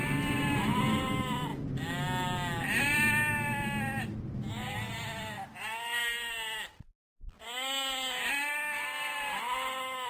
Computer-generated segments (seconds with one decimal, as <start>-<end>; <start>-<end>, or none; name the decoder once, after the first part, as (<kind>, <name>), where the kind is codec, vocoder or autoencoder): none